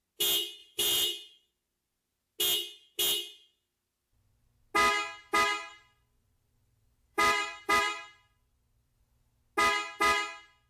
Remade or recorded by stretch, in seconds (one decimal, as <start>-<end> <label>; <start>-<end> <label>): 0.0-0.6 recorded; 0.6-1.5 remade; 1.5-5.7 recorded; 5.7-9.3 remade; 9.3-10.7 recorded